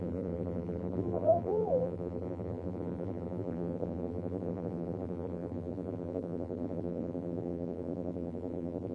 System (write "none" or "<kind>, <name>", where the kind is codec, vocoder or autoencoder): vocoder, BigVGAN v2